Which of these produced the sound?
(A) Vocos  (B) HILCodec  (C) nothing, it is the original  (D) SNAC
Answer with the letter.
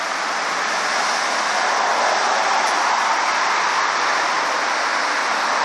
C